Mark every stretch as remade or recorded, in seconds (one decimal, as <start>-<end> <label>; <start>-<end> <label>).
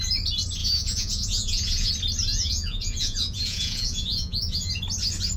0.0-0.6 recorded; 0.6-1.9 remade; 1.9-2.3 recorded; 2.3-4.7 remade; 4.7-5.4 recorded